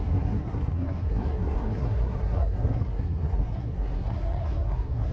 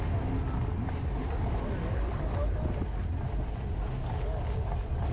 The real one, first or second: second